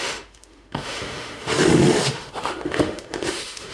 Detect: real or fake fake